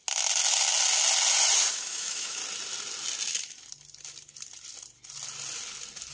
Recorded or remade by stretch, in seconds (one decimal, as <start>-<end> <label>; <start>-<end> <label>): 0.0-1.7 recorded; 1.7-2.4 remade; 2.4-6.1 recorded